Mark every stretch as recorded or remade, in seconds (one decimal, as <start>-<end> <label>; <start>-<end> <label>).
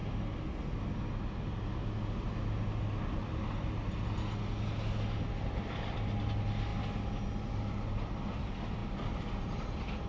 0.0-5.2 recorded; 5.2-6.7 remade; 6.7-7.7 recorded; 7.7-8.8 remade; 8.8-9.4 recorded; 9.4-10.1 remade